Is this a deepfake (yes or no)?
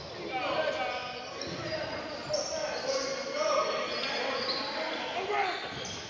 no